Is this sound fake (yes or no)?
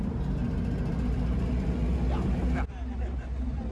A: no